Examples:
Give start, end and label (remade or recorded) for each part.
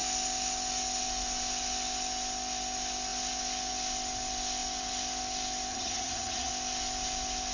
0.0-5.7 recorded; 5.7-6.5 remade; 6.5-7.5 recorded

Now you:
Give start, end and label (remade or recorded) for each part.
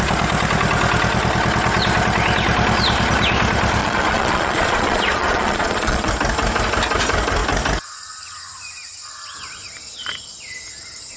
0.0-3.8 recorded; 3.8-6.1 remade; 6.1-11.2 recorded